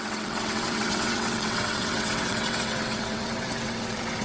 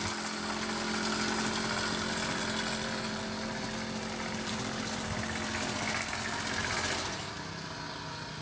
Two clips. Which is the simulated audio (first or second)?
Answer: first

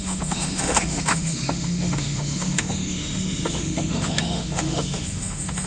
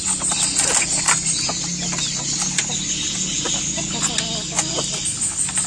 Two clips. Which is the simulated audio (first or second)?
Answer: first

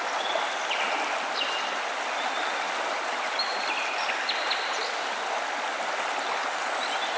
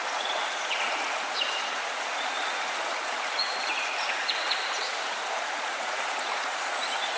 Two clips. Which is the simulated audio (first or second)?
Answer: second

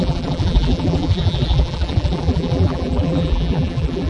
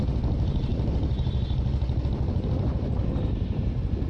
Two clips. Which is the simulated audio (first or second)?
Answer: first